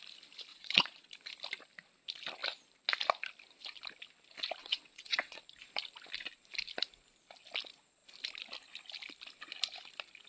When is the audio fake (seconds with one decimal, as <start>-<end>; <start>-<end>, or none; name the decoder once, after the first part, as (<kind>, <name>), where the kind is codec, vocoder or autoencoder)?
0.5-1.1 (vocoder, WaveNeXt); 4.6-5.4